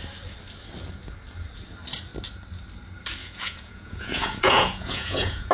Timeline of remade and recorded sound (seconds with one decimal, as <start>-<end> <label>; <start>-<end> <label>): 0.0-3.2 recorded; 3.2-5.5 remade